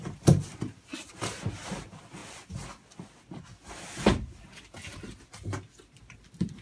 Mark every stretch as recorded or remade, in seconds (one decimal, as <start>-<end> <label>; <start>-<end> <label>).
0.0-6.6 recorded